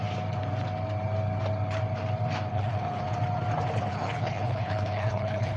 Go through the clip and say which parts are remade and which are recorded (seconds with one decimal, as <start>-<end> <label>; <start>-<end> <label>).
0.0-2.5 recorded; 2.5-3.0 remade; 3.0-3.9 recorded; 3.9-5.6 remade